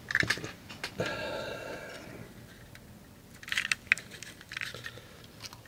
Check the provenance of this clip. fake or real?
real